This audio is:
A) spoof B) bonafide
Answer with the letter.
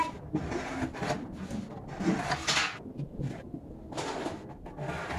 B